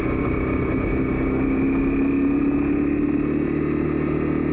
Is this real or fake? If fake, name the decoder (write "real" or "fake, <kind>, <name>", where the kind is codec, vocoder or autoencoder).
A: real